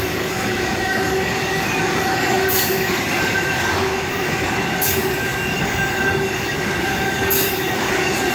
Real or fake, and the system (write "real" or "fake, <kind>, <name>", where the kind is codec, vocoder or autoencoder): fake, codec, DAC